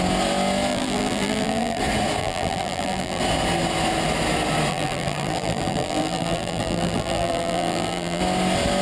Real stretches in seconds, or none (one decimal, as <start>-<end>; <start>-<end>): 0.0-0.7; 1.8-2.2; 3.2-4.7; 8.2-8.8